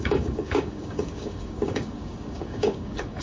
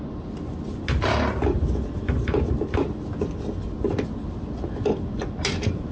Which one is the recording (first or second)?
second